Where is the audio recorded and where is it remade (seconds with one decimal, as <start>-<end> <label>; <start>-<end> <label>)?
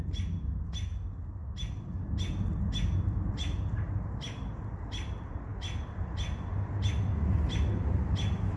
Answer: 0.0-8.6 recorded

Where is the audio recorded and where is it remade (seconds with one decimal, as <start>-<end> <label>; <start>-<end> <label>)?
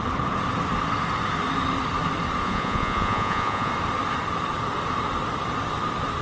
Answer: 0.0-2.4 recorded; 2.4-3.7 remade; 3.7-6.2 recorded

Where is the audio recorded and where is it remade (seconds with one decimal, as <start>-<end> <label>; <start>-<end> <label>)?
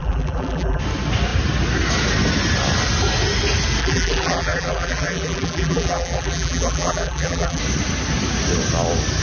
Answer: 0.0-0.8 remade; 0.8-3.8 recorded; 3.8-7.6 remade; 7.6-9.2 recorded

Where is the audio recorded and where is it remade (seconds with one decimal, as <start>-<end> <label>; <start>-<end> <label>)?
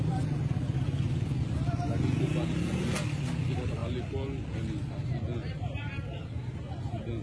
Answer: 0.0-7.2 recorded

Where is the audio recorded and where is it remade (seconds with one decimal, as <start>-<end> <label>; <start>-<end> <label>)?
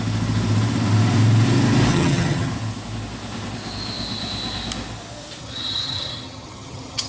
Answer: 0.0-1.9 recorded; 1.9-2.5 remade; 2.5-5.4 recorded; 5.4-7.1 remade